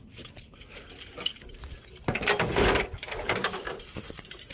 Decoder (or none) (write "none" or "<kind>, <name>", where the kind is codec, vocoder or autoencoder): none